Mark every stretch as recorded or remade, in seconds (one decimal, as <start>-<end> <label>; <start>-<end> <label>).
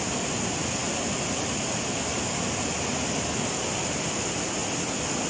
0.0-5.3 recorded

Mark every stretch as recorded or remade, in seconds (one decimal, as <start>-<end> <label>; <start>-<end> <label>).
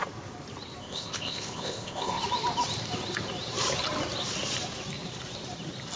0.0-0.8 recorded; 0.8-2.2 remade; 2.2-6.0 recorded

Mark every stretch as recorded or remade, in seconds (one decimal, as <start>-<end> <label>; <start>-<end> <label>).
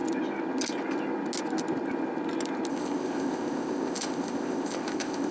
0.0-2.7 recorded; 2.7-5.3 remade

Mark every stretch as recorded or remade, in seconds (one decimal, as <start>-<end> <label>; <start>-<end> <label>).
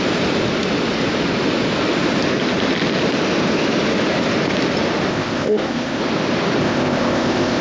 0.0-5.1 recorded; 5.1-6.0 remade; 6.0-6.6 recorded; 6.6-7.6 remade